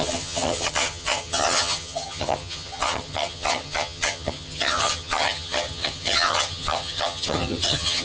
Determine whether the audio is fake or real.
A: fake